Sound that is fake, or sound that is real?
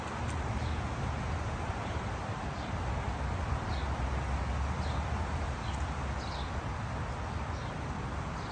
real